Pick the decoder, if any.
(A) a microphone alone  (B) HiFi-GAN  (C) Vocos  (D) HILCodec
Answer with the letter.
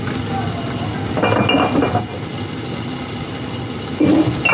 A